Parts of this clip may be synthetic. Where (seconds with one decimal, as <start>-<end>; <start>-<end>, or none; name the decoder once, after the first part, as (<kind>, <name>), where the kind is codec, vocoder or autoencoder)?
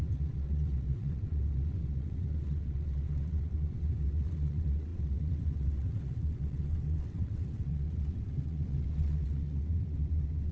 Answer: 0.0-10.5 (vocoder, WaveNeXt)